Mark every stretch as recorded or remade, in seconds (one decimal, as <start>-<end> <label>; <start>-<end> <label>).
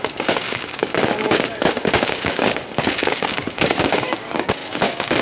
0.0-5.2 remade